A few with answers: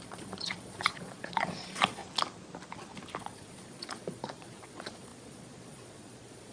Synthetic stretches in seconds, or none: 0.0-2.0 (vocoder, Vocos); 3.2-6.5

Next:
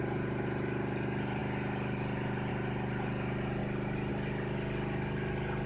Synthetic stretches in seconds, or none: none

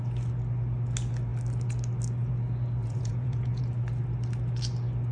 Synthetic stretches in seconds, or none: 2.8-3.6 (vocoder, Vocos)

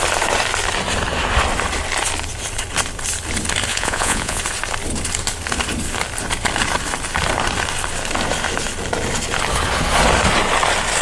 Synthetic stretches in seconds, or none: 3.7-4.4 (vocoder, Vocos)

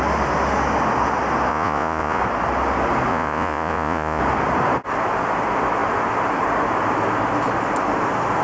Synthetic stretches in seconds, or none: 1.5-2.2 (vocoder, Vocos); 3.1-4.2